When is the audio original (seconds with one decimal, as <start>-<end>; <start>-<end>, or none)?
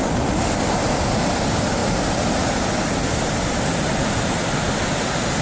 0.0-5.4